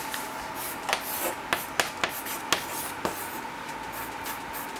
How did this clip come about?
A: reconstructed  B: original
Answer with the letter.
B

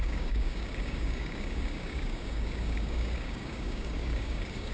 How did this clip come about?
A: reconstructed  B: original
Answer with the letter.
A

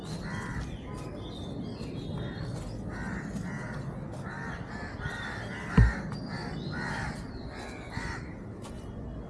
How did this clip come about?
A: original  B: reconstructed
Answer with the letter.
A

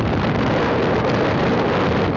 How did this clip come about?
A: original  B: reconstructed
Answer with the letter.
A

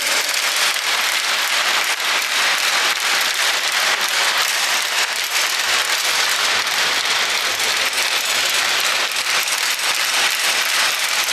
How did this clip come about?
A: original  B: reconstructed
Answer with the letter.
A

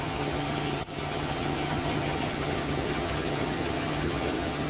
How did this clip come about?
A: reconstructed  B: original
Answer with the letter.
A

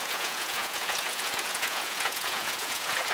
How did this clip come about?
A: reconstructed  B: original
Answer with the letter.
A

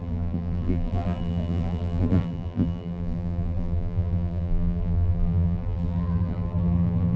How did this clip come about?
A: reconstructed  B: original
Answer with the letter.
A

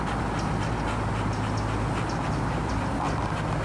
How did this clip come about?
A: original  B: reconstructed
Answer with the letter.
A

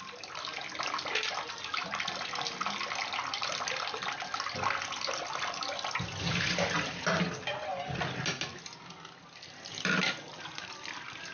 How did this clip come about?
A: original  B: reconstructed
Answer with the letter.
A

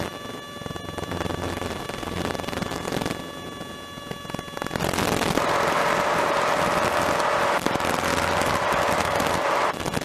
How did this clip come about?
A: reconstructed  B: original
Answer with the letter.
B